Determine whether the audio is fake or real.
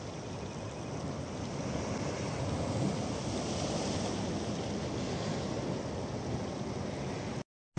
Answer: real